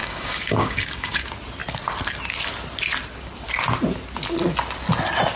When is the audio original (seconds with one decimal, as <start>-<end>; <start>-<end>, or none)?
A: 1.2-5.4